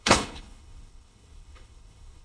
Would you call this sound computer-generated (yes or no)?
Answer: yes